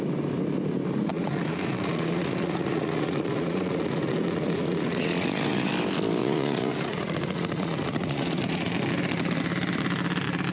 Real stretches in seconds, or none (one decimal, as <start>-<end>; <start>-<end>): 0.0-1.1; 5.7-6.2; 8.7-10.5